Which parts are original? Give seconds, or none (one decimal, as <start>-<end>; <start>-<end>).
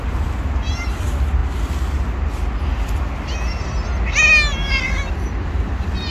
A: 0.0-6.1